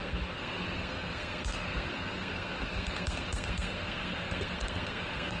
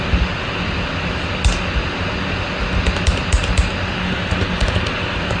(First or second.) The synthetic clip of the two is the first